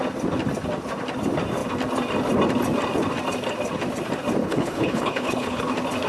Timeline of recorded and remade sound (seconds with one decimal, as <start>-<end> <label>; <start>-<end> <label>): 0.0-4.4 recorded; 4.4-5.6 remade; 5.6-6.1 recorded